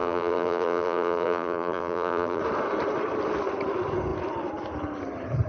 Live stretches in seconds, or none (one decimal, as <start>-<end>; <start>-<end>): 2.4-5.5